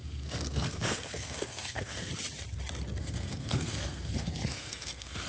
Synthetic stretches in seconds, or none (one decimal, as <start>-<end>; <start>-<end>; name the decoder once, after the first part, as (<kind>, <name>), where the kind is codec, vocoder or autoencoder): 0.0-2.1 (codec, SNAC); 3.0-5.3